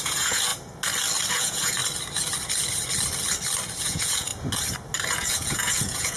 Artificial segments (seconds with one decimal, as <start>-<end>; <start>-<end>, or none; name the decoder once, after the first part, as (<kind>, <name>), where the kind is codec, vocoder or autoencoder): 0.0-0.5 (vocoder, Vocos); 1.3-1.8; 3.8-4.3; 5.1-6.2

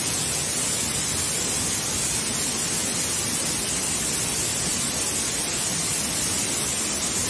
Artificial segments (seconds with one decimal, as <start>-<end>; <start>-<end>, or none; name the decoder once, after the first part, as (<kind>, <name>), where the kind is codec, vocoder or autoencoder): 0.0-0.5 (vocoder, Vocos)

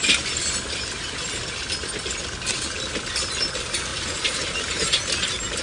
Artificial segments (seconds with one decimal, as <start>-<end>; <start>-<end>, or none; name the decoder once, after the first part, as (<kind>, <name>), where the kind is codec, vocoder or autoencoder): none

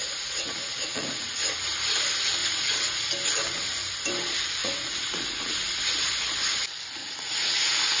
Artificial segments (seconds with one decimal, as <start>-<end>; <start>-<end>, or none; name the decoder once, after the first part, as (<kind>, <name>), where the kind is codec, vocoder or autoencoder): 0.0-2.0 (vocoder, Vocos); 2.4-3.1; 4.6-5.9; 7.0-8.0

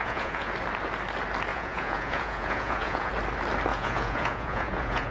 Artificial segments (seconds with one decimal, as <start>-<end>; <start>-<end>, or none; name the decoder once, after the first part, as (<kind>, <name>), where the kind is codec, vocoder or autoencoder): 0.0-0.5 (vocoder, Vocos); 1.5-3.1; 3.7-5.1